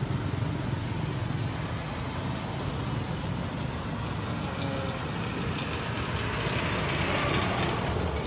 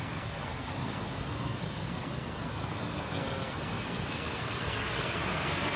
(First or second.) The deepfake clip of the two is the second